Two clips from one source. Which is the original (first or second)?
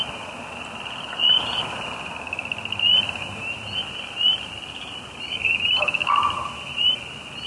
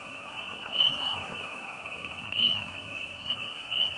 first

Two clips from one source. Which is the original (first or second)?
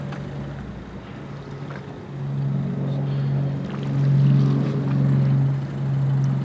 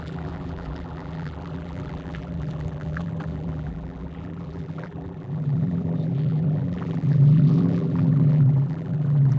first